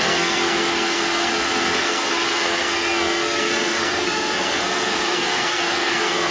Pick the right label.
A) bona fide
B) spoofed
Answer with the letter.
B